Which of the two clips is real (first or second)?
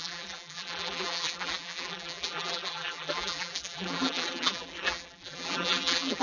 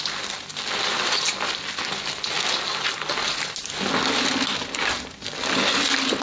second